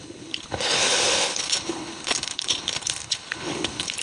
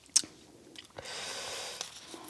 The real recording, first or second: second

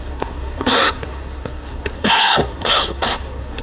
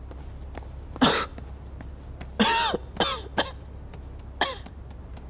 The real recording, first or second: second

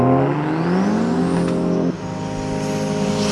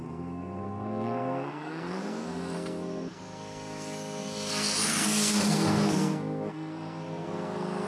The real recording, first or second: first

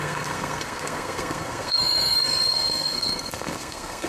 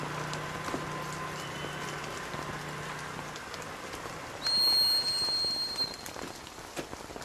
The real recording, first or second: second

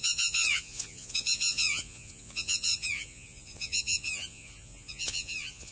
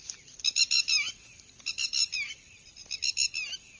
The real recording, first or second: second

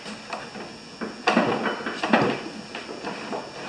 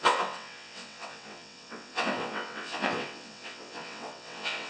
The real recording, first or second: first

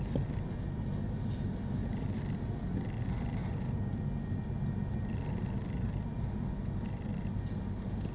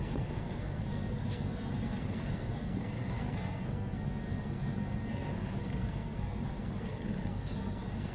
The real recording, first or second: first